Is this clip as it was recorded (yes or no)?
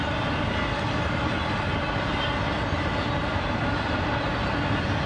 yes